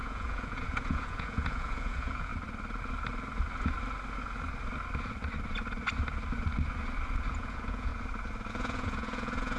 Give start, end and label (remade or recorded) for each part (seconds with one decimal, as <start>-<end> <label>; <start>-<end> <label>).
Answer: 0.0-2.3 remade; 2.3-7.2 recorded; 7.2-7.9 remade; 7.9-8.5 recorded; 8.5-9.6 remade